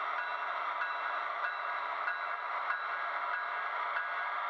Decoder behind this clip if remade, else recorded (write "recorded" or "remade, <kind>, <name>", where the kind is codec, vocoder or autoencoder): remade, vocoder, BigVGAN v2